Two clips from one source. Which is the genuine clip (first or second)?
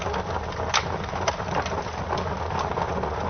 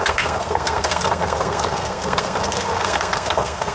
first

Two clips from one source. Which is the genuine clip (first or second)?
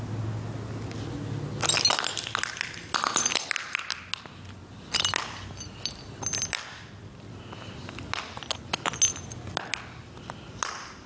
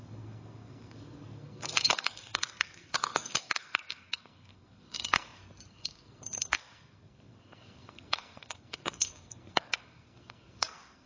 first